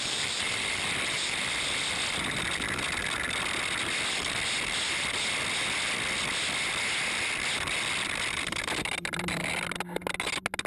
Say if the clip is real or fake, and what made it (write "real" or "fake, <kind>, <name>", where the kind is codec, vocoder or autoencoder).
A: real